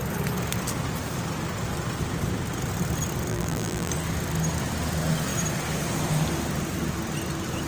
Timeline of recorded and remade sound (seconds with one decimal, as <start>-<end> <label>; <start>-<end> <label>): 0.0-3.3 recorded; 3.3-3.9 remade; 3.9-7.7 recorded